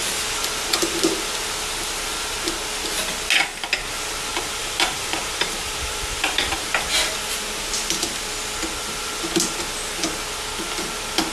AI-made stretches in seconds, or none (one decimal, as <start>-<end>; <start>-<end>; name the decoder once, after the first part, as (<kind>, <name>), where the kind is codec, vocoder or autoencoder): 4.3-6.8 (vocoder, BigVGAN v2)